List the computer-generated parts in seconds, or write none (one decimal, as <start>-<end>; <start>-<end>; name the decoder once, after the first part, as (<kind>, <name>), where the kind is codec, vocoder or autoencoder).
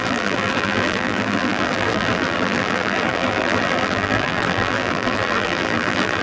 0.0-6.2 (vocoder, BigVGAN v2)